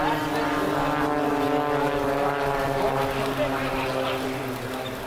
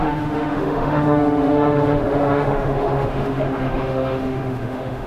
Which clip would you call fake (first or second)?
second